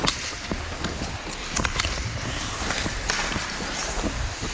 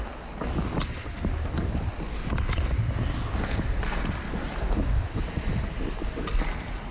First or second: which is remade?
first